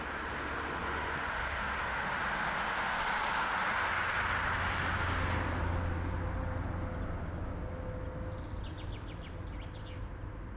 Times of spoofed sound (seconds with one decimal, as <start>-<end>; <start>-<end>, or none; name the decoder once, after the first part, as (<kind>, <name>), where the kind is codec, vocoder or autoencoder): 0.8-1.4 (vocoder, Vocos)